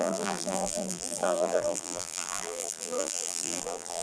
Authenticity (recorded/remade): remade